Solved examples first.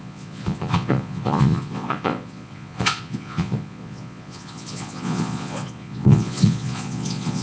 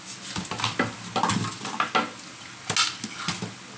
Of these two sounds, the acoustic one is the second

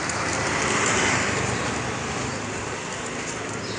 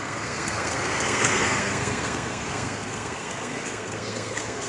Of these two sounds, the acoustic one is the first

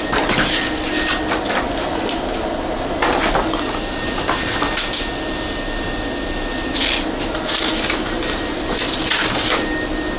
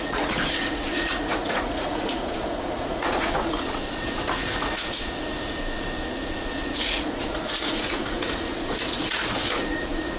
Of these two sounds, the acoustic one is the first